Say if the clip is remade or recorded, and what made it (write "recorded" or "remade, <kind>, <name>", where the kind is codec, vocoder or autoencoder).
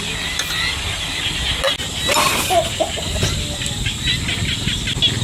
recorded